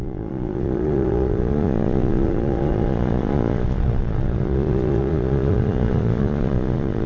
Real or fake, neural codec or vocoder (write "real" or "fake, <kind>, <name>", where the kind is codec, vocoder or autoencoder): fake, vocoder, Vocos